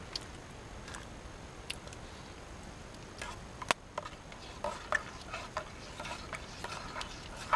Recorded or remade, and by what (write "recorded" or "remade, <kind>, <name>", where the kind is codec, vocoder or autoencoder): recorded